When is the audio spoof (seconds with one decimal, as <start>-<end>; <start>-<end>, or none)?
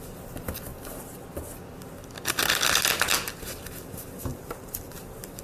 4.3-5.0